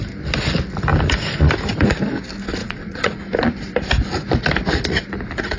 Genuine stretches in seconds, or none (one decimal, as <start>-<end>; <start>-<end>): 0.0-2.6; 3.3-5.6